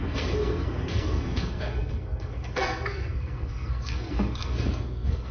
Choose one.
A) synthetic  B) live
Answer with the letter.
A